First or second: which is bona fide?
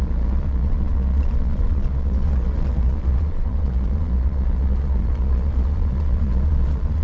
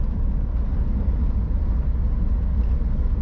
second